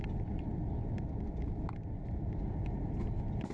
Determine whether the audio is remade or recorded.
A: recorded